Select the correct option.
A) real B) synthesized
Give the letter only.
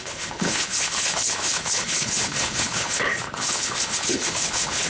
B